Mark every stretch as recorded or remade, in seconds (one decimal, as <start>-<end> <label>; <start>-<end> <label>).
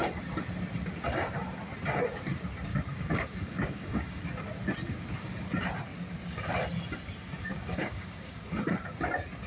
0.0-2.7 recorded; 2.7-4.2 remade; 4.2-7.4 recorded; 7.4-8.4 remade; 8.4-9.5 recorded